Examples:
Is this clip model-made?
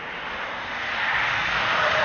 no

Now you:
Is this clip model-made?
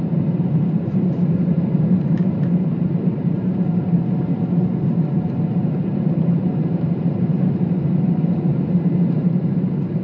yes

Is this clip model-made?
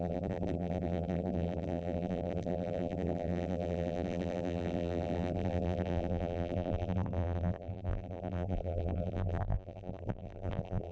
yes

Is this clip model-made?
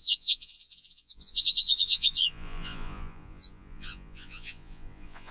yes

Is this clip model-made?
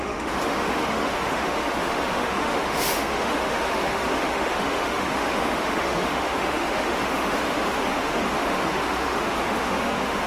yes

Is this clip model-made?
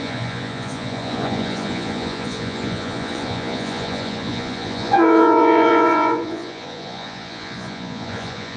yes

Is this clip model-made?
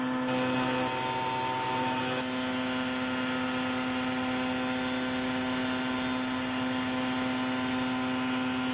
no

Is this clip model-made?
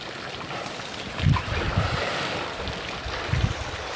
no